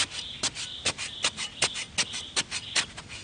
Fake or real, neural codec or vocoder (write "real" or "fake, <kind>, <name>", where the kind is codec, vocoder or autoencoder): real